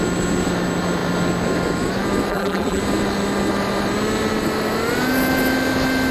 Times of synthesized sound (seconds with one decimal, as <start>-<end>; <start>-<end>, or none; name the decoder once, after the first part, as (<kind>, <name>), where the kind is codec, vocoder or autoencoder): 2.3-2.8 (vocoder, BigVGAN v2)